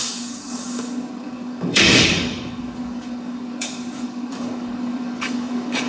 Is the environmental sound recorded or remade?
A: remade